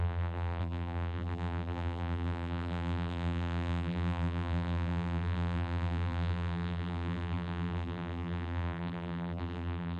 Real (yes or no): no